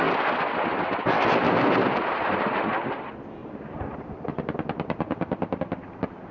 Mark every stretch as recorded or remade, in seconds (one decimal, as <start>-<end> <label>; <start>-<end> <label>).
0.0-3.4 recorded; 3.4-5.6 remade; 5.6-6.3 recorded